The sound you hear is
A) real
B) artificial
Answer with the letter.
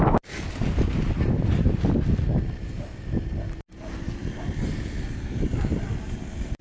A